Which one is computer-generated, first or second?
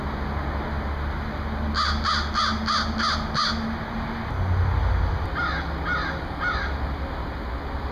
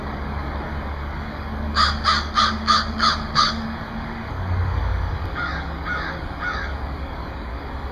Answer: second